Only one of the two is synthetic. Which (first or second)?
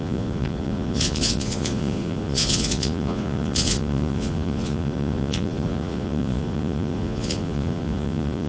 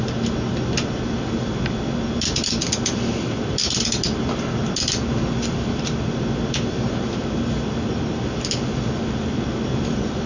first